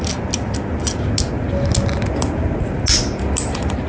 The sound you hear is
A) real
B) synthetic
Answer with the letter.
A